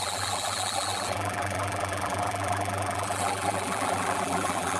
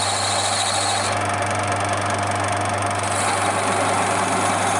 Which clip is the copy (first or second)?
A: first